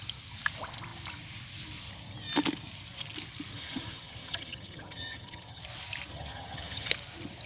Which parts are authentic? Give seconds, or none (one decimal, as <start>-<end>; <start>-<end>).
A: 0.0-3.5; 5.6-6.1; 6.9-7.5